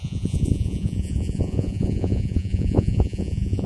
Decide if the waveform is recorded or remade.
remade